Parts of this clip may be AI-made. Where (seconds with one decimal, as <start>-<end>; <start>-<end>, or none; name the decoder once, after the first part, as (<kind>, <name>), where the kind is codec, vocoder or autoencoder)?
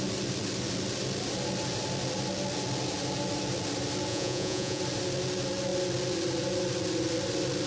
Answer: 4.1-4.8 (vocoder, Vocos)